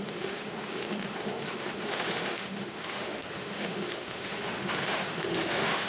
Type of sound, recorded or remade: remade